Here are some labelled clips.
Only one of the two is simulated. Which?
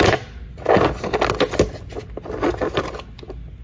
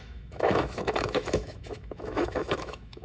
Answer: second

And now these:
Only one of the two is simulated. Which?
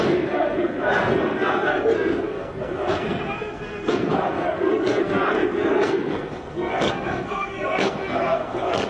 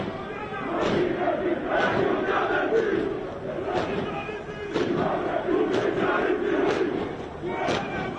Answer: first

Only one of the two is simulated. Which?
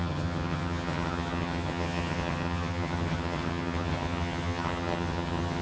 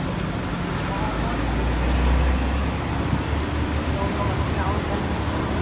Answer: first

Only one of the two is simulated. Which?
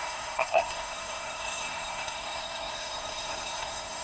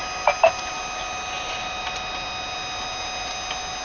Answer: first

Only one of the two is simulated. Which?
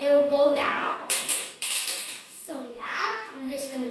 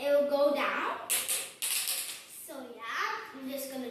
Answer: first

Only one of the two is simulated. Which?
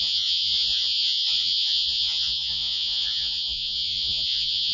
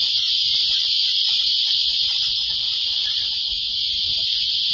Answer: first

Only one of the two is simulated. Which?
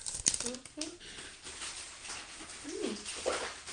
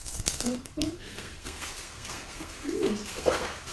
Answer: second